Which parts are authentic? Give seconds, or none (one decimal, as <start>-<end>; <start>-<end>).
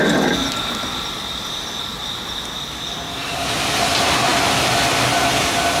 0.0-5.8